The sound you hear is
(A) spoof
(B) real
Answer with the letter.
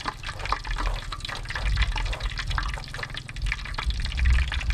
B